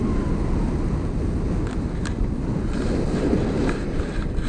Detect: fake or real real